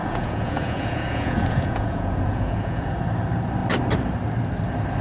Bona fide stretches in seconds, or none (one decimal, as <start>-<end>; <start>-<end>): 3.0-5.0